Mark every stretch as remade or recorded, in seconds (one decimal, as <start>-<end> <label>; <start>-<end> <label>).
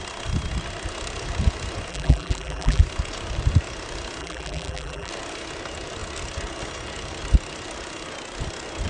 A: 0.0-1.9 recorded; 1.9-2.8 remade; 2.8-4.2 recorded; 4.2-5.1 remade; 5.1-8.9 recorded